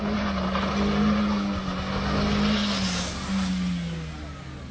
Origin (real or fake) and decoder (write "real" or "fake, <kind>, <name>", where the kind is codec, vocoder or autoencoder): real